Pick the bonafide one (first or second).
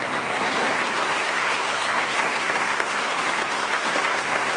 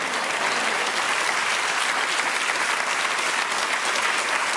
second